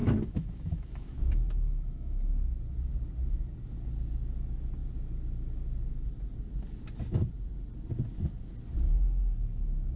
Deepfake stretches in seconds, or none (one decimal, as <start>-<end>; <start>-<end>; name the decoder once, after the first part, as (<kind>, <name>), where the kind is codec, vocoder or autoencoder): 0.0-2.3 (autoencoder, DAC-VAE)